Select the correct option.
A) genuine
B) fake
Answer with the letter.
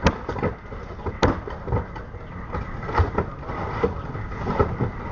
A